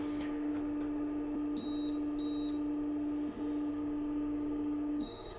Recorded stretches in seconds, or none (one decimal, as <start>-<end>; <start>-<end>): 0.5-3.7

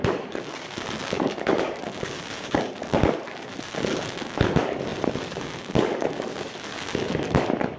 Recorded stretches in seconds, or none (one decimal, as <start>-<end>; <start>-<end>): none

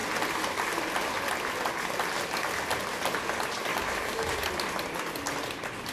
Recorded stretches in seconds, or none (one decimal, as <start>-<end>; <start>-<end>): 0.0-3.7; 4.3-5.9

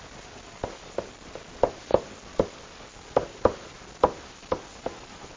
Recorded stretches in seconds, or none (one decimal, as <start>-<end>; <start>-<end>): 0.0-5.4

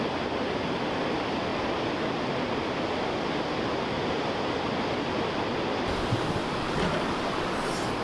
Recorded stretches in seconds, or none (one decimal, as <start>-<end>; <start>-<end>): 0.0-6.4; 7.2-8.0

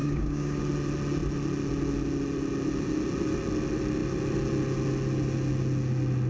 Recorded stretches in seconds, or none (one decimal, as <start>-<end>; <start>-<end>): 0.6-6.3